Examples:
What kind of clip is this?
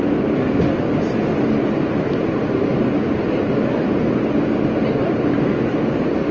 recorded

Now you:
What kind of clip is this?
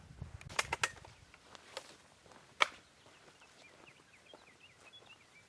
recorded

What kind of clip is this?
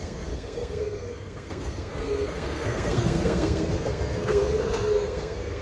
remade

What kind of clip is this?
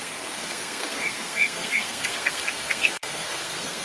remade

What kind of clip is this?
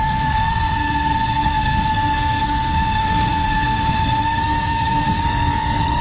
remade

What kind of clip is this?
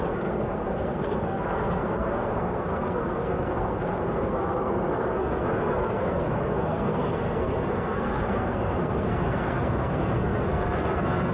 remade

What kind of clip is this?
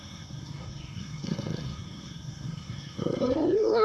remade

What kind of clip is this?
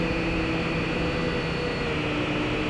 recorded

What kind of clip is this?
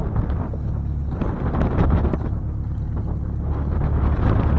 recorded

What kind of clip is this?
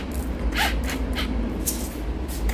recorded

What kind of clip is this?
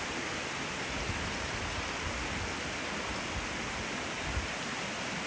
recorded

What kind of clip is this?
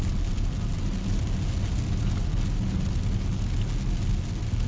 recorded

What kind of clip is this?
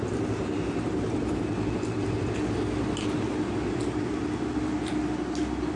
recorded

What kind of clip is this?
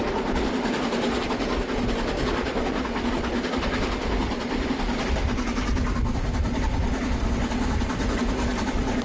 recorded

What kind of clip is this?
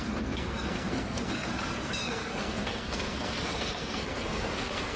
remade